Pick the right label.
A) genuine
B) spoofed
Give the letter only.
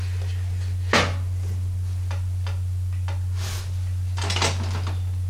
A